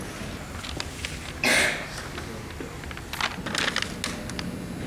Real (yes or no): yes